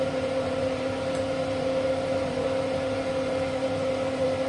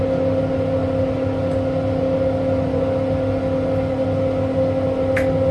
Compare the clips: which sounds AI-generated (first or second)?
first